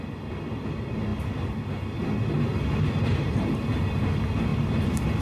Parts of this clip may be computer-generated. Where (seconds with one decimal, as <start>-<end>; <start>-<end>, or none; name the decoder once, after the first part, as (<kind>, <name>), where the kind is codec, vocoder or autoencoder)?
3.1-3.6 (vocoder, BigVGAN v2)